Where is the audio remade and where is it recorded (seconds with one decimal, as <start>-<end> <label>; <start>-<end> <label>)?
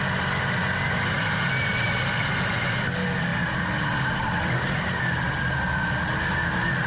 0.0-6.9 recorded